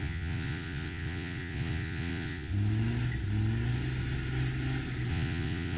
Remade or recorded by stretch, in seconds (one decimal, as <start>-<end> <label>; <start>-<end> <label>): 0.0-2.5 remade; 2.5-5.1 recorded; 5.1-5.8 remade